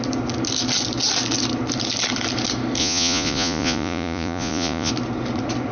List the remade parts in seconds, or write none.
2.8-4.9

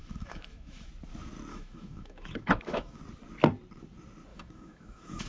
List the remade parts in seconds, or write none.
0.0-0.9; 1.5-3.0; 4.3-5.3

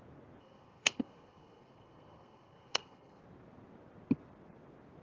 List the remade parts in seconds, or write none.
0.4-3.2

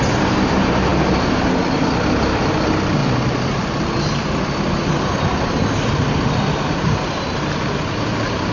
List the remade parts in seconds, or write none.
none

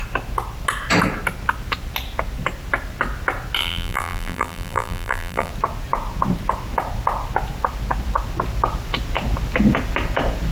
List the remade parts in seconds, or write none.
3.6-5.5

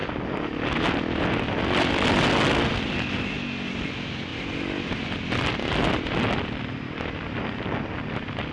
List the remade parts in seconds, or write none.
none

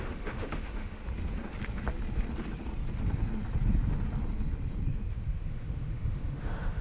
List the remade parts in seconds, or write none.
0.0-1.0; 5.1-6.8

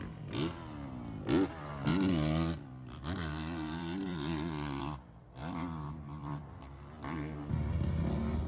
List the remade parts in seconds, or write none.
1.9-4.8; 5.4-6.6